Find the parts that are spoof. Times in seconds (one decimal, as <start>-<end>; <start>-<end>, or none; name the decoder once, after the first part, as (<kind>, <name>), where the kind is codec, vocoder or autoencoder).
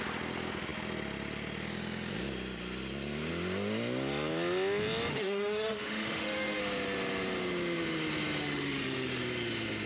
5.1-6.6 (autoencoder, DAC-VAE); 8.4-9.2